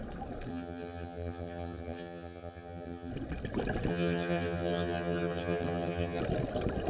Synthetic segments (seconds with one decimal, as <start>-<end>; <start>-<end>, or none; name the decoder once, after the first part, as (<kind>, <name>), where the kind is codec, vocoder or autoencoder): 0.5-3.1 (vocoder, HiFi-GAN); 3.9-6.2